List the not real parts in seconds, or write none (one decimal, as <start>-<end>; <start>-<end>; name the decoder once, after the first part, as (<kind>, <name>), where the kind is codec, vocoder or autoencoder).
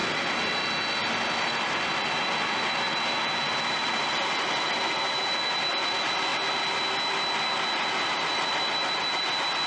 none